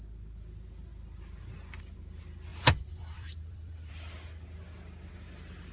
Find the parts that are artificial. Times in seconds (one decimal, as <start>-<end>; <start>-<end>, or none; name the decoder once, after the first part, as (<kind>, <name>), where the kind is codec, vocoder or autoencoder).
2.5-3.9 (vocoder, BigVGAN v2)